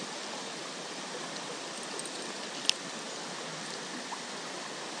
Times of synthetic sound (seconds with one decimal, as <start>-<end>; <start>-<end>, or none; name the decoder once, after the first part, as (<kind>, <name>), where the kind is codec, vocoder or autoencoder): none